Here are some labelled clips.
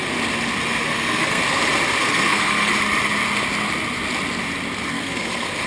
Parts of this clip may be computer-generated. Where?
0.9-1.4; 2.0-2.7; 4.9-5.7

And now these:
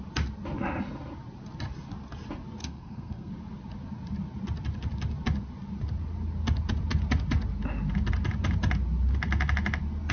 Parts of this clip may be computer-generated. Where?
2.6-3.3